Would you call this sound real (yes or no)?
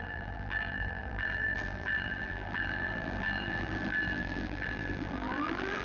no